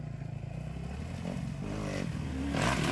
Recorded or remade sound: recorded